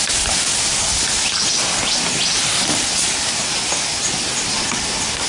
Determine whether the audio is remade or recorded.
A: recorded